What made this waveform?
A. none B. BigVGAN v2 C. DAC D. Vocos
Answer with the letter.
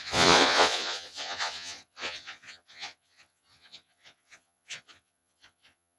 D